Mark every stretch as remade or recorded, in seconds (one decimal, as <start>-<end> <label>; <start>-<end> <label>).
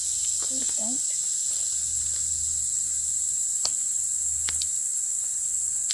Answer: 0.0-5.9 recorded